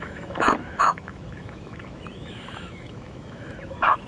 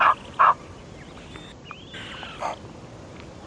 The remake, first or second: first